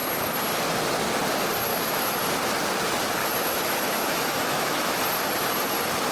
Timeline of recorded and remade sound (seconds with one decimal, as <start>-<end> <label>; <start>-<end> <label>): 0.0-1.7 recorded; 1.7-2.2 remade; 2.2-3.2 recorded; 3.2-5.0 remade; 5.0-6.1 recorded